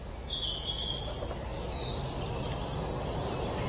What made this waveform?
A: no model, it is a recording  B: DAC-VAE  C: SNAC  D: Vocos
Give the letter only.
A